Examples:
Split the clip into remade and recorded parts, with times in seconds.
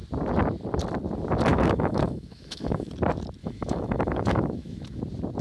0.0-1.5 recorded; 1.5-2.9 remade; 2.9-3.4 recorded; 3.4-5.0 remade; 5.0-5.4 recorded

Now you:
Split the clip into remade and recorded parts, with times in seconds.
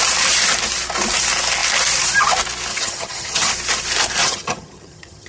0.0-2.7 recorded; 2.7-3.5 remade; 3.5-4.2 recorded; 4.2-5.3 remade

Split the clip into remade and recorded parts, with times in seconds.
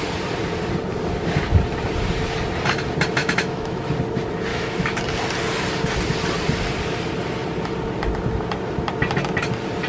0.0-3.2 recorded; 3.2-3.8 remade; 3.8-4.5 recorded; 4.5-5.0 remade; 5.0-9.9 recorded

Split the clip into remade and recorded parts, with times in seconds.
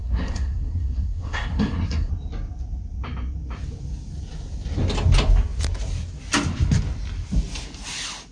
0.0-2.1 remade; 2.1-8.3 recorded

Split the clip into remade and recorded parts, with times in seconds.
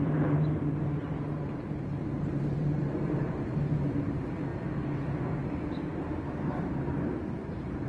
0.0-4.5 remade; 4.5-5.2 recorded; 5.2-7.9 remade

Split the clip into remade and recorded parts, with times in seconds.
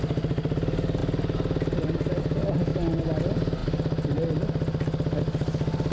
0.0-5.9 recorded